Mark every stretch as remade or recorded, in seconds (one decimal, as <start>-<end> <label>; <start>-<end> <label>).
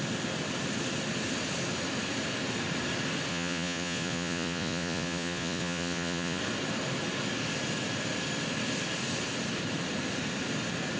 0.0-3.3 recorded; 3.3-6.4 remade; 6.4-11.0 recorded